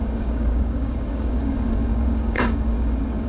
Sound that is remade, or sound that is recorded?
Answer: remade